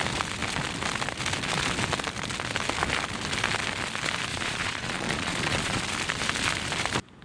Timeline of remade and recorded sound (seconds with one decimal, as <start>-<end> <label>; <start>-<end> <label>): 0.0-4.3 recorded; 4.3-5.8 remade; 5.8-7.2 recorded